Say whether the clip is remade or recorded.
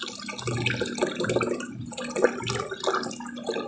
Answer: recorded